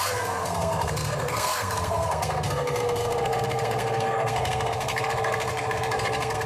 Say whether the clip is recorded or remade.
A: remade